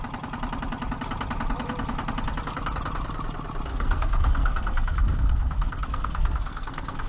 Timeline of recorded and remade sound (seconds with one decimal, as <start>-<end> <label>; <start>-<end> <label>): 0.0-3.7 recorded; 3.7-7.1 remade